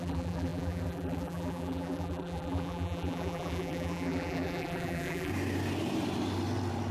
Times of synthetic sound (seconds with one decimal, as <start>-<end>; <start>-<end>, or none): 0.0-5.3